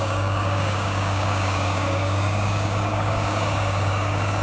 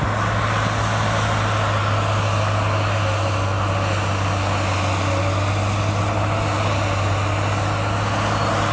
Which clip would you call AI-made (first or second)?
first